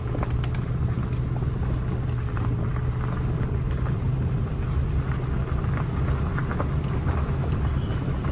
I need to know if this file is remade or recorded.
recorded